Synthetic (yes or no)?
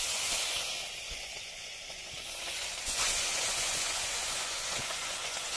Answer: yes